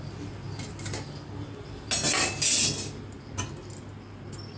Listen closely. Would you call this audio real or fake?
real